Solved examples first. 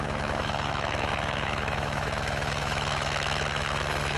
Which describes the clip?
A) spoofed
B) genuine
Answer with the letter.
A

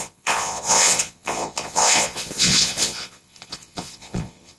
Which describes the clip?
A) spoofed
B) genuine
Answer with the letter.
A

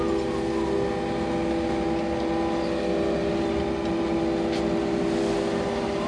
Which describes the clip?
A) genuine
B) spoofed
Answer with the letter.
A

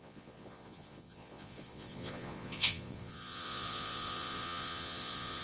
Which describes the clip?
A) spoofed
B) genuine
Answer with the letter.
A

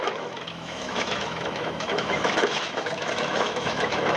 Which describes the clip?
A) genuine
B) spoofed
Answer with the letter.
B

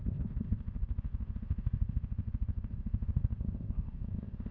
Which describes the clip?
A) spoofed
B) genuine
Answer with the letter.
A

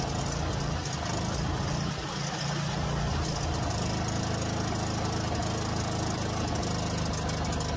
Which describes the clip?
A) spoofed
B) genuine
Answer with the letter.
B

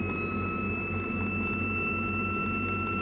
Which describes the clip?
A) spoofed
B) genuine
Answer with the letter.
B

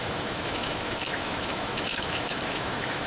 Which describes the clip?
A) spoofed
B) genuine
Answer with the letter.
A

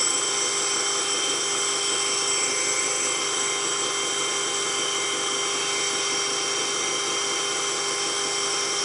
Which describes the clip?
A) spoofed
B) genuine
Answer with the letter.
B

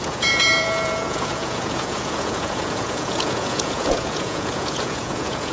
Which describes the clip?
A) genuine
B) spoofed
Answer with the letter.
B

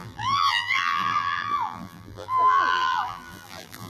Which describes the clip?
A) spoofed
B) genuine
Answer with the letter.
A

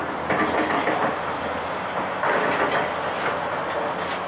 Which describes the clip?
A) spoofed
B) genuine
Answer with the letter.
B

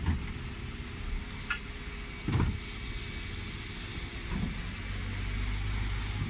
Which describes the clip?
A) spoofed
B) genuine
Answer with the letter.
B